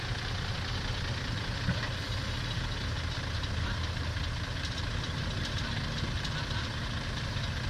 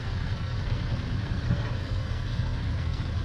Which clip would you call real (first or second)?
first